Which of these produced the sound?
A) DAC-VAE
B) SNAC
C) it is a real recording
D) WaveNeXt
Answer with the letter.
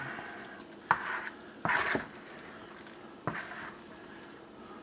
C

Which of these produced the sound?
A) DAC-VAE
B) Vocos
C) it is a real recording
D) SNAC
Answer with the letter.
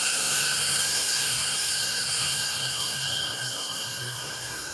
D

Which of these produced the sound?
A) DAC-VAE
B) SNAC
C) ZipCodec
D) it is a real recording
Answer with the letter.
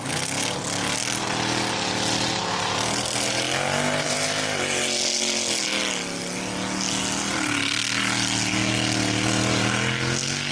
D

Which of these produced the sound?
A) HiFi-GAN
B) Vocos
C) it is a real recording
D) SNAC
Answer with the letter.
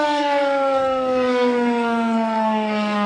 D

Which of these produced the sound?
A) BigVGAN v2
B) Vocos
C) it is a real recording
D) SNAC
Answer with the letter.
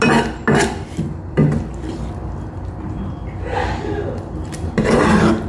C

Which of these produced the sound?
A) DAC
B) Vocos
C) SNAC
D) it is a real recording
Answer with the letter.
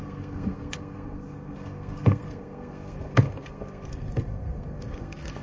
C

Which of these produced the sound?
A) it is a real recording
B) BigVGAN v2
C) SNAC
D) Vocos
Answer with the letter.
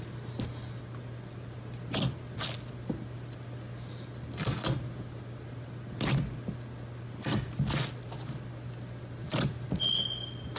A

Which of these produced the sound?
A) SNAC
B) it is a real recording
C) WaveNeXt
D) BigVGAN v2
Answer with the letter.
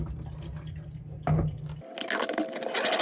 B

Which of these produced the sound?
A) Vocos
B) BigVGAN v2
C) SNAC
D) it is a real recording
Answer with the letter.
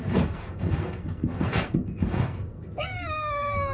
C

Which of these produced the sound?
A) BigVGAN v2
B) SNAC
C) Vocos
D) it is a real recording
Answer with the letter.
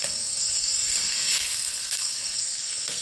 B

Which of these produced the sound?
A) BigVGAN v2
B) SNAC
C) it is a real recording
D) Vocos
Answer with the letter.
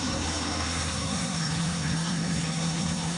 B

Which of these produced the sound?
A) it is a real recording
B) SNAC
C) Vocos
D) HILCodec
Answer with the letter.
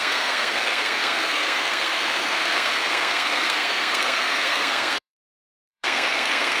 B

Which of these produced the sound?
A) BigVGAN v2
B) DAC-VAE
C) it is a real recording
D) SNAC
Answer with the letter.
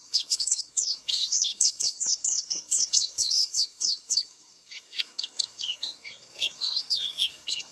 D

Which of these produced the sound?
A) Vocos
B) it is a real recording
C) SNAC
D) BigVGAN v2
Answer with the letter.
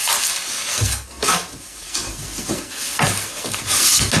C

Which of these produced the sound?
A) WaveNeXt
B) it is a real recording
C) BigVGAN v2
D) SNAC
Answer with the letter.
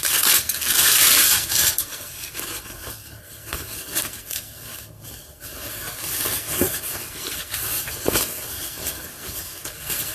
D